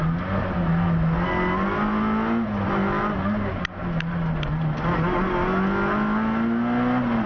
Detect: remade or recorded recorded